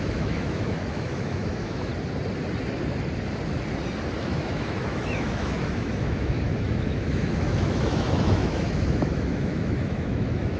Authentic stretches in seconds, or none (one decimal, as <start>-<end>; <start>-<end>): 1.9-4.2